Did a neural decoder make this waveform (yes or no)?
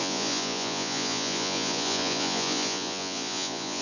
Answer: yes